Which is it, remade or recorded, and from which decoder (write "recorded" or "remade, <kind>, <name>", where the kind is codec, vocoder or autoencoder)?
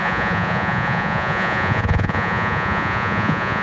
remade, vocoder, Vocos